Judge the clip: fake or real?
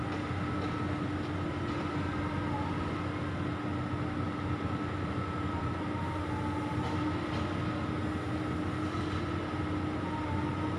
real